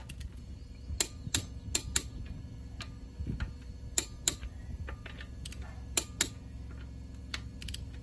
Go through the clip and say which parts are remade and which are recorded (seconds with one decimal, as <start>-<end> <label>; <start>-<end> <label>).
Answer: 0.0-8.0 recorded